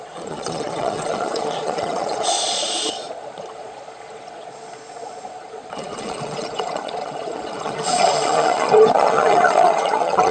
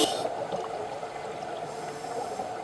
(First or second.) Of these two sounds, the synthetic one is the first